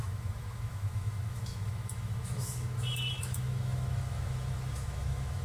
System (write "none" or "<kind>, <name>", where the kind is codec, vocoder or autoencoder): autoencoder, DAC-VAE